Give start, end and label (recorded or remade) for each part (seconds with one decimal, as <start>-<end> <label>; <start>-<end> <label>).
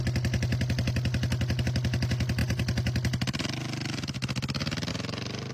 0.0-5.5 recorded